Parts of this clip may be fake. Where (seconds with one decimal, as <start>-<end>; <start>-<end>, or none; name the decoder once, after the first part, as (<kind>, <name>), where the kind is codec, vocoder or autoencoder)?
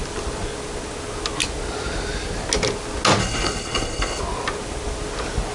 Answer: 3.2-4.2 (codec, HILCodec)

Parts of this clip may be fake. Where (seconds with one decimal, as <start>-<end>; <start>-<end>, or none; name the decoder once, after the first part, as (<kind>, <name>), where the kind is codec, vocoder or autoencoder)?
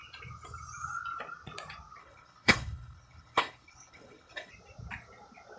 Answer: 2.0-4.5 (codec, HILCodec)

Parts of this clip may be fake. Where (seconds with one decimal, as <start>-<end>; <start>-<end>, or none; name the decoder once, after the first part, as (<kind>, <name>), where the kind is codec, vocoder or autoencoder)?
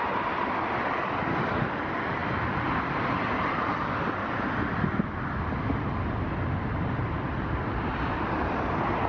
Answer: none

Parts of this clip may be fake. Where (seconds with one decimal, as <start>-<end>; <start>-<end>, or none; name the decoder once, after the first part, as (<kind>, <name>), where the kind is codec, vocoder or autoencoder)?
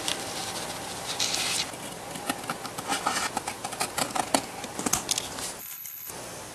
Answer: 5.6-6.1 (codec, HILCodec)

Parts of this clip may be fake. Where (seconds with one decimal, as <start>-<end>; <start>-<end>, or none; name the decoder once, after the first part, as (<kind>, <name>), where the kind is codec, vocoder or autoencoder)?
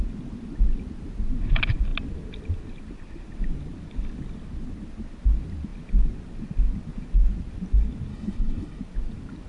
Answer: 8.1-8.8 (codec, HILCodec)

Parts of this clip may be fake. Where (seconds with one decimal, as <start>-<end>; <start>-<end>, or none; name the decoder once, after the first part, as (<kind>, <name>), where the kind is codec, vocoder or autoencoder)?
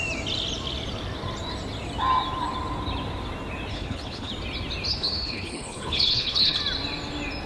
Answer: 3.7-4.3 (codec, HILCodec); 4.9-6.6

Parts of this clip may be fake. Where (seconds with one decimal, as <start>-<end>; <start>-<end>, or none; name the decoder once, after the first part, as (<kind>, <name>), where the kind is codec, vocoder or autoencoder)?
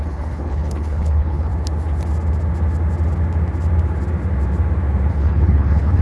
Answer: 0.0-1.5 (codec, HILCodec); 5.1-6.0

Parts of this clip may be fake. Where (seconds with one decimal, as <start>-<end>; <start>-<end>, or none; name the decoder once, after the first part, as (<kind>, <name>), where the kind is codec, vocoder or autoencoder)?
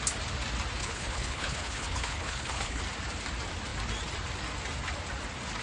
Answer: 0.8-2.8 (codec, HILCodec)